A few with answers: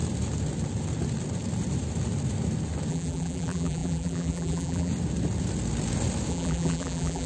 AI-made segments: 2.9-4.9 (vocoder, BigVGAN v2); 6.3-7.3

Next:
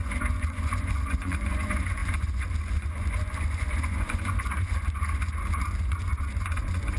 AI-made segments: 0.0-7.0 (vocoder, Vocos)

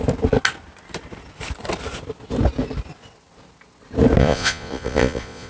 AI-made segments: 4.2-5.5 (vocoder, Vocos)

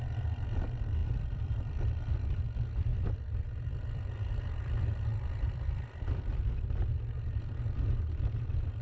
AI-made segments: 1.0-2.3 (vocoder, BigVGAN v2); 2.9-6.5

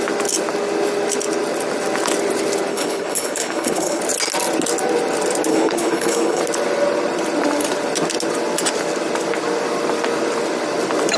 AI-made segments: 2.7-4.0 (codec, HILCodec); 5.5-6.4

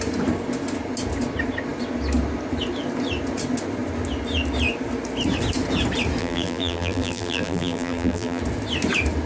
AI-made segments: 6.2-8.4 (vocoder, BigVGAN v2)